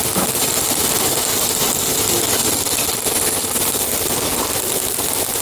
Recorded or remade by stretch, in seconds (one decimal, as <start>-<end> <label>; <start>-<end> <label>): 0.0-2.4 recorded; 2.4-3.7 remade; 3.7-5.4 recorded